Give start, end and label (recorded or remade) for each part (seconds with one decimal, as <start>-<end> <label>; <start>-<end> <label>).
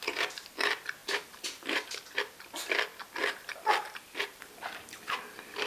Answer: 0.0-1.0 recorded; 1.0-2.0 remade; 2.0-3.2 recorded; 3.2-5.7 remade